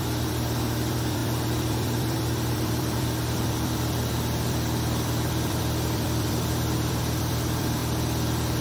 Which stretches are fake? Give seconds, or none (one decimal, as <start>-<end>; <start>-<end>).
0.0-7.8